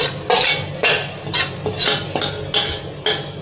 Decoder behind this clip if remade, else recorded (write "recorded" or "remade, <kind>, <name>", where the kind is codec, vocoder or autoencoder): recorded